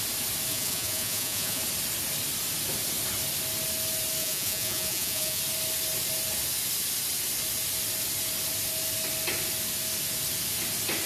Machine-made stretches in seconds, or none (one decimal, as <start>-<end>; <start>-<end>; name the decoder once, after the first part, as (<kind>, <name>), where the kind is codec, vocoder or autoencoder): 0.5-1.6 (vocoder, Vocos); 4.2-5.4